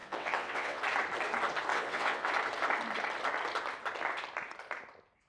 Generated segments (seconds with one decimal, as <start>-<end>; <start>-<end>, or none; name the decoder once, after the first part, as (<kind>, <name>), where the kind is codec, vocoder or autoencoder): 0.0-0.8 (vocoder, WaveNeXt); 1.7-2.3